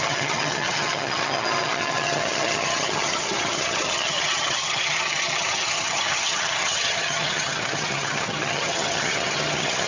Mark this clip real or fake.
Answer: fake